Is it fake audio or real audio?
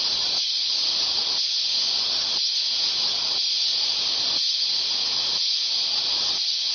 real